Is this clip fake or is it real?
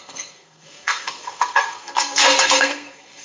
fake